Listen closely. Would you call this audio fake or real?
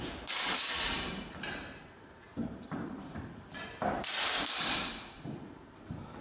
fake